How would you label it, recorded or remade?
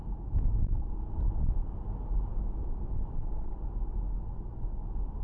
remade